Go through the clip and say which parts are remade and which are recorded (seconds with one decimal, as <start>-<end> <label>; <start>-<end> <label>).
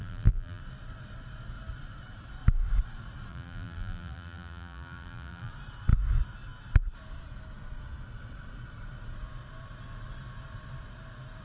0.0-0.6 remade; 0.6-3.3 recorded; 3.3-5.5 remade; 5.5-11.4 recorded